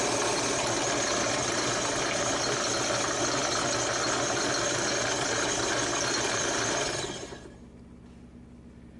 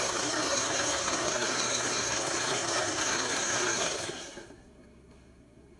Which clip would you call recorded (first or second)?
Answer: first